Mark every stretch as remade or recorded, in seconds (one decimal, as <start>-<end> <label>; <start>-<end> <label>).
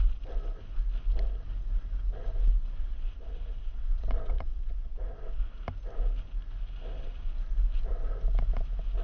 0.0-2.6 recorded; 2.6-5.6 remade; 5.6-9.0 recorded